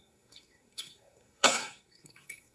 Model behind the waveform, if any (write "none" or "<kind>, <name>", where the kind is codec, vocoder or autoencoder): codec, SNAC